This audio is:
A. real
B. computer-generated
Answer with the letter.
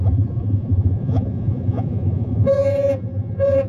B